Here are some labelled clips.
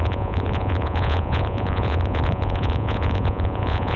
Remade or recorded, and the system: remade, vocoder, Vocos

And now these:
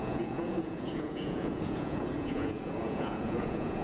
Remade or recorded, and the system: remade, vocoder, Vocos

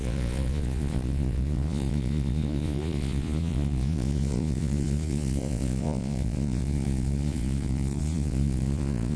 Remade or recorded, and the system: remade, vocoder, Vocos